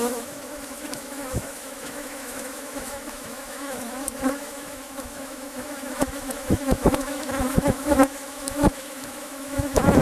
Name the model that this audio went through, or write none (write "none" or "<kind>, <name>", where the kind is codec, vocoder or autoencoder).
autoencoder, DAC-VAE